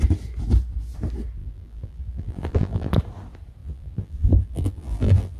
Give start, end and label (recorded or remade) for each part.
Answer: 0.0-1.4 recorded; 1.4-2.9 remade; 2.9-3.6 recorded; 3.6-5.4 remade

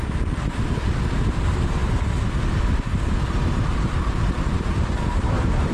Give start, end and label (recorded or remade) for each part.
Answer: 0.0-1.8 remade; 1.8-3.4 recorded; 3.4-5.7 remade

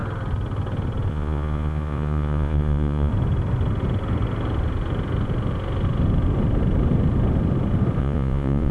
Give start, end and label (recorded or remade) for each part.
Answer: 0.0-1.1 recorded; 1.1-3.1 remade; 3.1-8.0 recorded; 8.0-8.7 remade

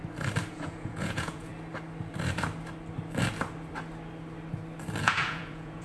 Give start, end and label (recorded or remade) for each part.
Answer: 0.0-0.5 recorded; 0.5-1.5 remade; 1.5-5.0 recorded; 5.0-5.8 remade

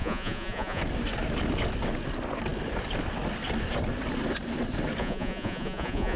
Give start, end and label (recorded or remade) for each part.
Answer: 0.0-0.8 remade; 0.8-5.0 recorded; 5.0-6.2 remade

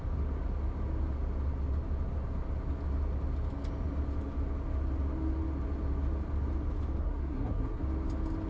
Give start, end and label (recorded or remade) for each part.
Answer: 0.0-7.0 recorded; 7.0-7.8 remade; 7.8-8.5 recorded

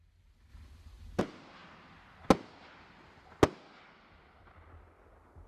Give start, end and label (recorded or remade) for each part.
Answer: 0.0-5.5 recorded